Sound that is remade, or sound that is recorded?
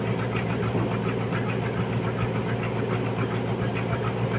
recorded